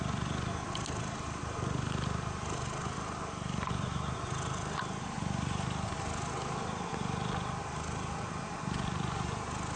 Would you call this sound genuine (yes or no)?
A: yes